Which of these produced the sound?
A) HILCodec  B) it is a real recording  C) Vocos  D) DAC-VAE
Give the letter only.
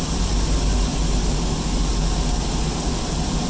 B